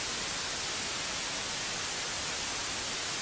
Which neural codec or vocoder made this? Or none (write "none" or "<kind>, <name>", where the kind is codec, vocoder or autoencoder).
none